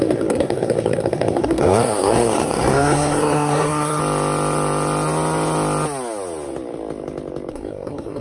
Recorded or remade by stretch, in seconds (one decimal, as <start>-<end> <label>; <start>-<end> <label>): 0.0-4.0 remade; 4.0-7.5 recorded; 7.5-8.2 remade